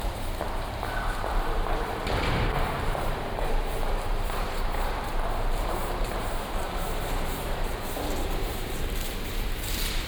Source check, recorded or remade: remade